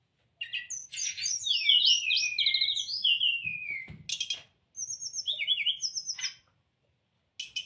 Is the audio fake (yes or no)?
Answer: no